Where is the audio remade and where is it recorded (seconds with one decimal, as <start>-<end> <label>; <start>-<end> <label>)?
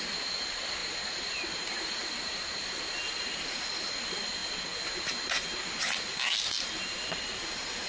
0.0-7.9 recorded